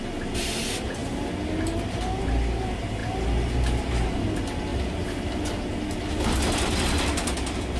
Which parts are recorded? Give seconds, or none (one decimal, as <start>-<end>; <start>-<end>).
0.0-7.8